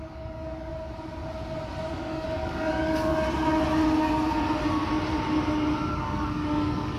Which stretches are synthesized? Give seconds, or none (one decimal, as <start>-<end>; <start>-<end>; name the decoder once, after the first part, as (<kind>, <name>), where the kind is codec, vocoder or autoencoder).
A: 0.0-0.7 (codec, DAC); 1.9-3.1; 5.9-7.0